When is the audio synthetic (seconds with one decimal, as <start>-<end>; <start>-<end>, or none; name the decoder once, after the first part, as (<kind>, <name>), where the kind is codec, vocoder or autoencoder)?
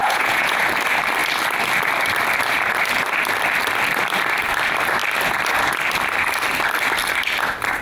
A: 0.0-0.6 (vocoder, Vocos)